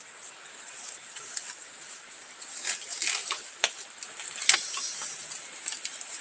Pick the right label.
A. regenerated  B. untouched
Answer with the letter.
B